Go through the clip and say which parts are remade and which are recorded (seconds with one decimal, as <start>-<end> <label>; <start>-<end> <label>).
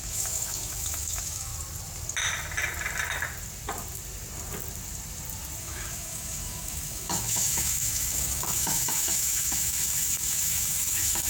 0.0-1.5 remade; 1.5-5.6 recorded; 5.6-11.3 remade